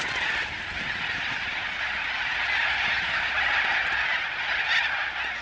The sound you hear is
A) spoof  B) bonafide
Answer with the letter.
B